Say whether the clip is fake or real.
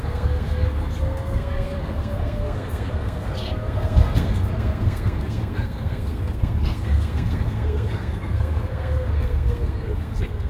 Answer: fake